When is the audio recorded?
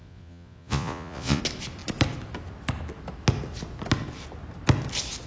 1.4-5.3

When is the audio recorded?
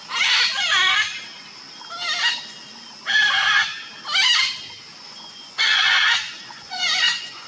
0.0-4.9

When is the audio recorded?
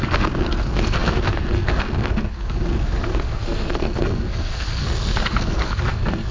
none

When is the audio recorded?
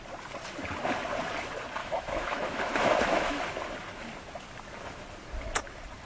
0.0-1.8; 3.4-6.0